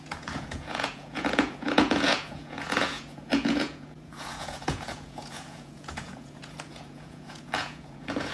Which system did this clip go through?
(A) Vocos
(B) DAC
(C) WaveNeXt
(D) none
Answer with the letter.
A